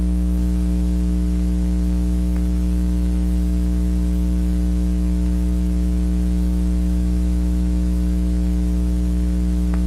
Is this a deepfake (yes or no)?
yes